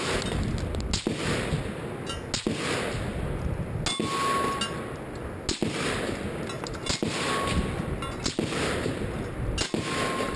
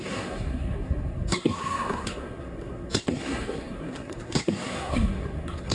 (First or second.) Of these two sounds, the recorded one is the first